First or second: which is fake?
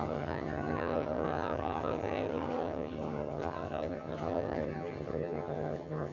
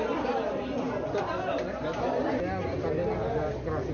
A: first